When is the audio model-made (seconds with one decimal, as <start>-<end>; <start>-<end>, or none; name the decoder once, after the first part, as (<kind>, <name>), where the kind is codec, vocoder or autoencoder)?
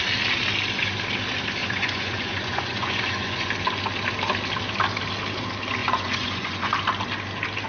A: 1.6-3.5 (vocoder, Vocos); 5.8-6.7